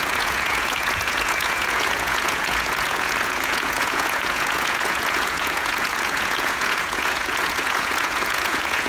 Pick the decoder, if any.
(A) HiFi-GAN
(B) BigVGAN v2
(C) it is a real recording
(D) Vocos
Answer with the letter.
D